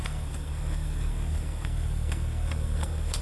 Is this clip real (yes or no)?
no